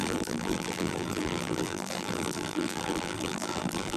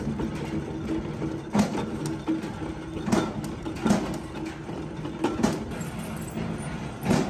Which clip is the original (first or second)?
second